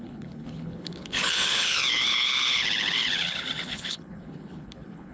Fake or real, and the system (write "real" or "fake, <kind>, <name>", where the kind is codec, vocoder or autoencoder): fake, codec, HILCodec